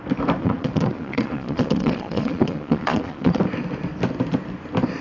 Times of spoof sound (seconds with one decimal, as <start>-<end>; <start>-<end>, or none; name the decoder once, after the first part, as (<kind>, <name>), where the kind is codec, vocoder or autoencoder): 0.4-3.4 (vocoder, Vocos)